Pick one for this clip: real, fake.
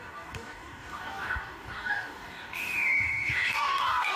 fake